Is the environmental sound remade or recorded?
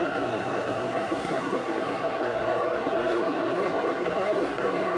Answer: remade